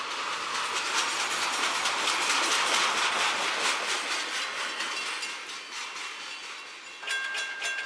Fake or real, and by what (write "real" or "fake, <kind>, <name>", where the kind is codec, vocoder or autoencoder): real